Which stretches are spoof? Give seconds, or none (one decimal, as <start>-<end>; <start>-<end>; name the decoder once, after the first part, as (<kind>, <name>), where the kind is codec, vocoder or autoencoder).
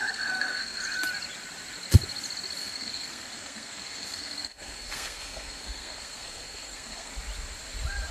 0.0-0.8 (codec, SNAC); 2.6-7.1